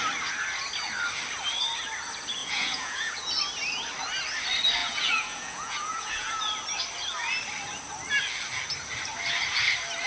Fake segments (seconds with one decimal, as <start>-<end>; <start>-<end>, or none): 2.4-3.3; 4.8-6.4